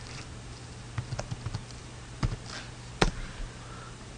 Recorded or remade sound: recorded